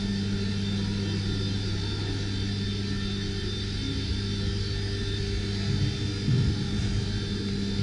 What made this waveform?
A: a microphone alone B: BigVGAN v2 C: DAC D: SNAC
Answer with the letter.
A